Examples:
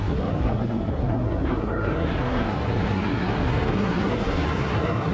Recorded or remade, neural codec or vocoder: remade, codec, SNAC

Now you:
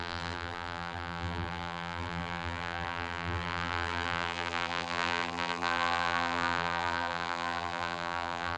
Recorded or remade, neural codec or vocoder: remade, vocoder, BigVGAN v2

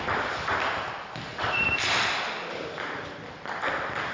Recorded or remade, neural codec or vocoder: remade, vocoder, BigVGAN v2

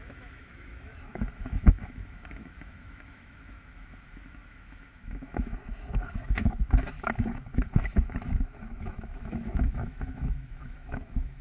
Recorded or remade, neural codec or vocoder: remade, autoencoder, DAC-VAE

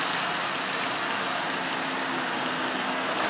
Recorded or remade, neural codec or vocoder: recorded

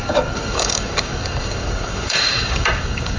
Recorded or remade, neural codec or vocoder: remade, codec, DAC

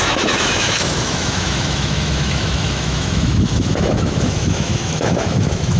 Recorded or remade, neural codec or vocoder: remade, autoencoder, DAC-VAE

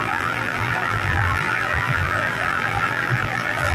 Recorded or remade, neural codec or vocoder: remade, vocoder, BigVGAN v2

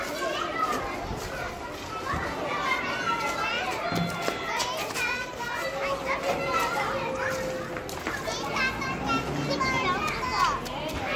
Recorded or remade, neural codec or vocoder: recorded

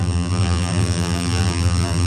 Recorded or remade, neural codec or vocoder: remade, vocoder, BigVGAN v2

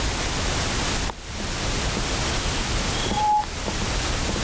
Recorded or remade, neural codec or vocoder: recorded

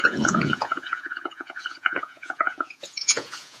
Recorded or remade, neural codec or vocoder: remade, vocoder, Vocos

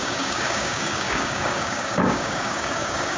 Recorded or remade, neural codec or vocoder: remade, codec, DAC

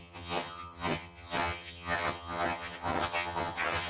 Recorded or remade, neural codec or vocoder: remade, vocoder, HiFi-GAN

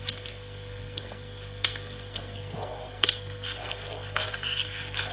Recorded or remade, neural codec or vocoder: remade, codec, SNAC